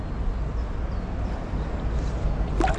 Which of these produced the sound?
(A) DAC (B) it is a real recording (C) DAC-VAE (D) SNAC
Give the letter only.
B